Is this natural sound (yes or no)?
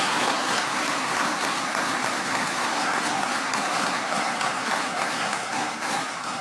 no